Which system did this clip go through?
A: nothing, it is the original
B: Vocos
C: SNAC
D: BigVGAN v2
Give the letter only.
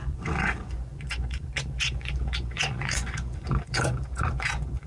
B